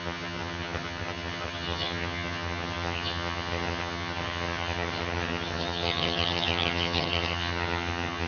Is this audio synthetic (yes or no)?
yes